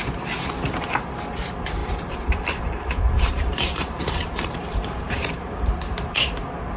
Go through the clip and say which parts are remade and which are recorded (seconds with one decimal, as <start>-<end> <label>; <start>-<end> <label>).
0.0-1.8 recorded; 1.8-5.6 remade; 5.6-6.8 recorded